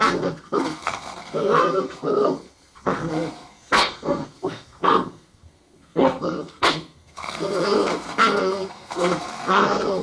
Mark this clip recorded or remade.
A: remade